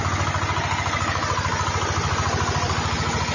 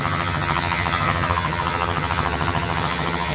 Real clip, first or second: first